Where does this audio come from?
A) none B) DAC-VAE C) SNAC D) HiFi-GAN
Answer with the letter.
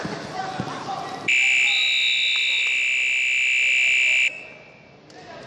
A